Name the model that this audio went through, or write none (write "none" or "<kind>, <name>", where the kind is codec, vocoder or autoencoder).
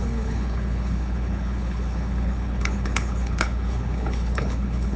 codec, HILCodec